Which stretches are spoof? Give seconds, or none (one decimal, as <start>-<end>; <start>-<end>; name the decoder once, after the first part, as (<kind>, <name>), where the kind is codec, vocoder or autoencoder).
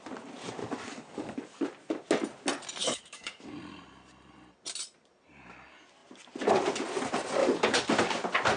0.6-1.6 (codec, DAC); 2.8-3.5; 7.4-7.9